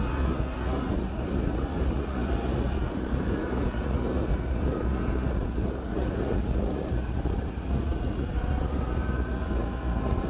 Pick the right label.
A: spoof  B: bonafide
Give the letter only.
A